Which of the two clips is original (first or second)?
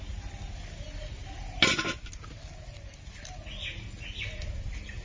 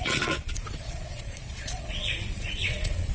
first